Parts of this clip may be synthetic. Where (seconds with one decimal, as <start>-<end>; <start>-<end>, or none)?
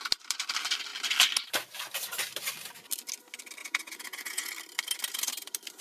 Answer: 3.6-4.5